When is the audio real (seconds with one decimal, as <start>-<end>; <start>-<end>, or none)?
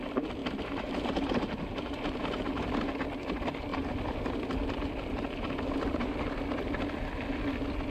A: 0.0-0.4; 2.7-3.7; 6.3-7.9